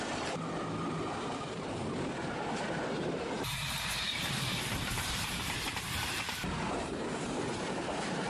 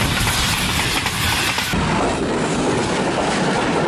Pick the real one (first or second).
second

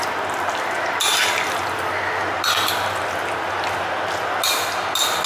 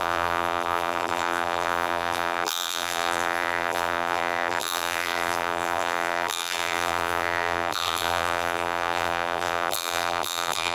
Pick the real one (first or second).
first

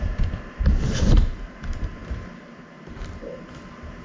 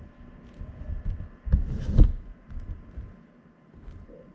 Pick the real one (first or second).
second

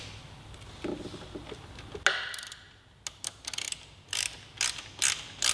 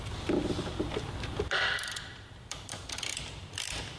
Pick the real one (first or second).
first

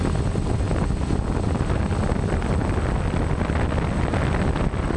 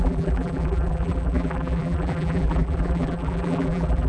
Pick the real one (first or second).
first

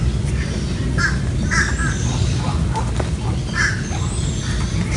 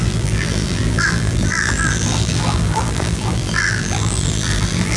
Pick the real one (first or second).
first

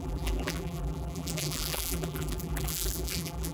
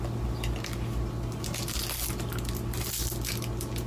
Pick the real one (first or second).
second